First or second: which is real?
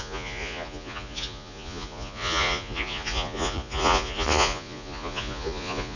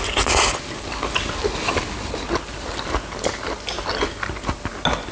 second